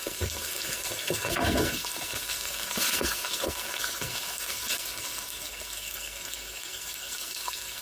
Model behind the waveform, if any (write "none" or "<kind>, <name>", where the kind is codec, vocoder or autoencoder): codec, SNAC